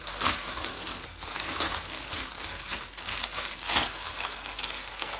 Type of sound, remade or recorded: remade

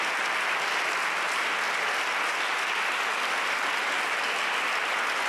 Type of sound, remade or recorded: recorded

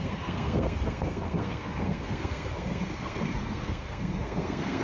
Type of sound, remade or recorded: remade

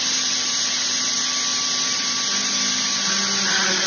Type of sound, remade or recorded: recorded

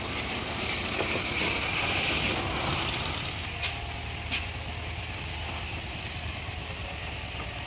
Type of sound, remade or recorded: recorded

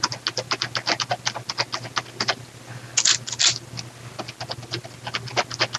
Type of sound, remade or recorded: recorded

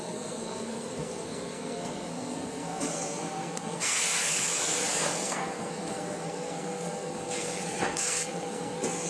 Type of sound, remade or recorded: remade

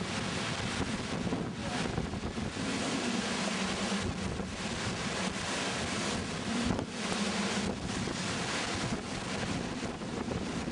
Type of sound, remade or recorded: recorded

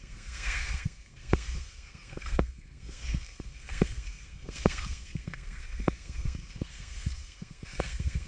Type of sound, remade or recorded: remade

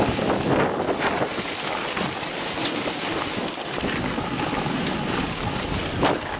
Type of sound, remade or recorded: recorded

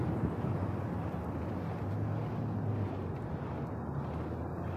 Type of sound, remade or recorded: recorded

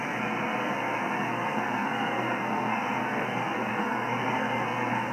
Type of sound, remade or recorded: remade